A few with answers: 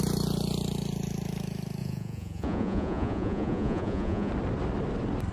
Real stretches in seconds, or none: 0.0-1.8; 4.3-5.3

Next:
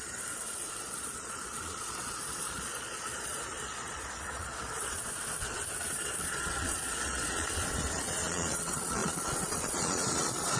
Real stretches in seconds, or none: none

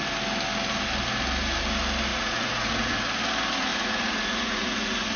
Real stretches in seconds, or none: 0.0-2.1; 3.0-3.7

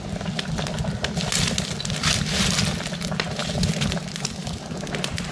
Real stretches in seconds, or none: 0.0-5.3

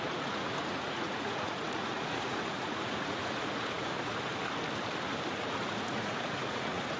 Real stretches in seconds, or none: 4.3-5.3

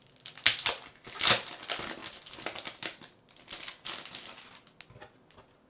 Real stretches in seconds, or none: 0.0-5.7

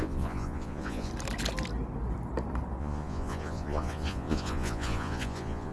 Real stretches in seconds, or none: 1.1-2.8